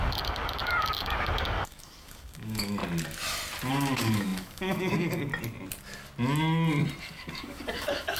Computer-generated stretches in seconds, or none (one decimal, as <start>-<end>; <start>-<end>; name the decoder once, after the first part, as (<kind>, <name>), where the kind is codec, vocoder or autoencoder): 0.0-2.8 (codec, DAC); 3.7-5.3; 7.0-8.2